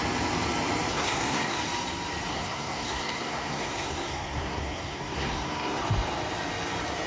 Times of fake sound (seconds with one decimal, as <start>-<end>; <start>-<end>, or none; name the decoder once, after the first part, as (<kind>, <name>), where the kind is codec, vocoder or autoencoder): 0.9-1.6 (codec, SNAC); 2.3-5.8